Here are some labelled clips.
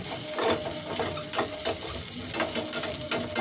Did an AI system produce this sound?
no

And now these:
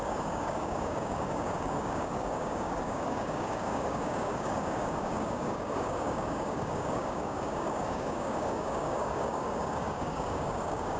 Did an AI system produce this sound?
yes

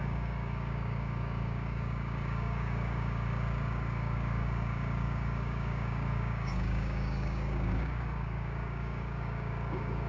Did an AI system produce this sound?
yes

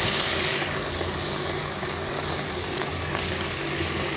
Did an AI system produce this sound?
yes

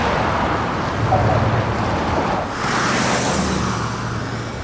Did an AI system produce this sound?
no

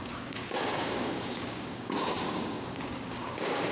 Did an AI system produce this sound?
yes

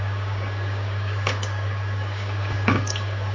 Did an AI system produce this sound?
yes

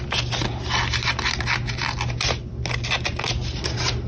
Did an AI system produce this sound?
no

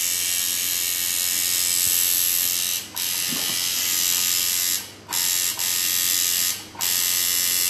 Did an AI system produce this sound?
no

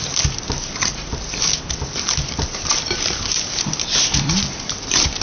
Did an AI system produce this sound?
no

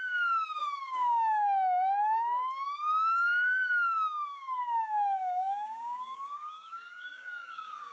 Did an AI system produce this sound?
yes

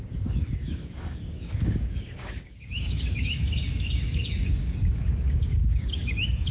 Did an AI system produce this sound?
yes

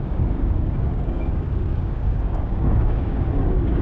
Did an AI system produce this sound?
yes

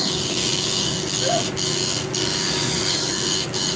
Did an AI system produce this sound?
yes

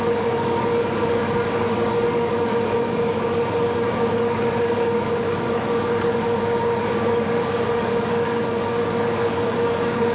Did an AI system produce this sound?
yes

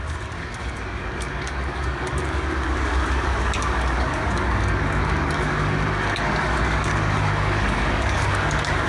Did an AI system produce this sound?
yes